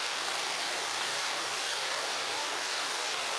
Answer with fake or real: fake